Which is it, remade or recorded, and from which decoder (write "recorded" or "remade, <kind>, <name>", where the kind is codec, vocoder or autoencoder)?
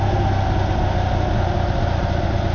recorded